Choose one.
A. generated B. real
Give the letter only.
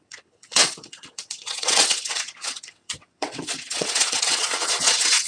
A